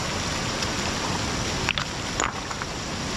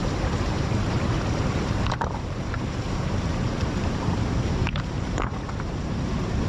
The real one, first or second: first